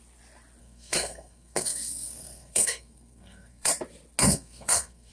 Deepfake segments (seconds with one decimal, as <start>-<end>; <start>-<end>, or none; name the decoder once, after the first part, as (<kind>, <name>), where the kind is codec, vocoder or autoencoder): 0.6-3.7 (codec, SNAC); 4.2-5.1